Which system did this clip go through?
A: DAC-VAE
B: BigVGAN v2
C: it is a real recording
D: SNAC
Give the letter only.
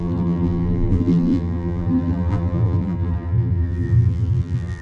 B